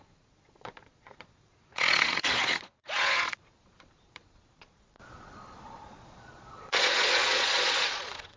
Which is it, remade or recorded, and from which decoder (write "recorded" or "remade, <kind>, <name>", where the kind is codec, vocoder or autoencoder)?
remade, vocoder, Vocos